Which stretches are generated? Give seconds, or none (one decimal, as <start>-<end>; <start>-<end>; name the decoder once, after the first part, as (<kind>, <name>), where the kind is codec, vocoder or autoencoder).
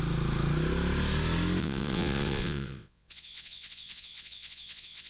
1.6-5.1 (vocoder, WaveNeXt)